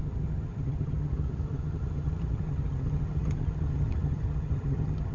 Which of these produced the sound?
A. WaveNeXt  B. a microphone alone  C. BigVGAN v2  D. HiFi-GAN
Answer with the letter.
D